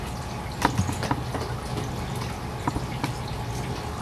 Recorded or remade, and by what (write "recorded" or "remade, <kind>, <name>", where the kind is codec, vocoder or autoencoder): recorded